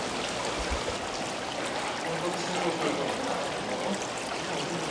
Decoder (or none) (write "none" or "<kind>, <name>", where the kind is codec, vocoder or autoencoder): none